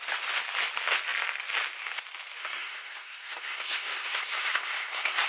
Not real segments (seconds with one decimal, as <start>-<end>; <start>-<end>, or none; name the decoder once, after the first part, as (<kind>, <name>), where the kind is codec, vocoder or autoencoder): 2.4-5.3 (codec, SNAC)